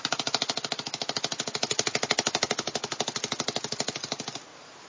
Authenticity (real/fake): real